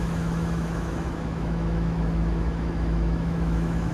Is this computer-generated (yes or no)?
yes